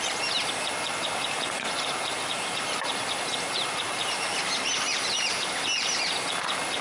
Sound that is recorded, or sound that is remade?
remade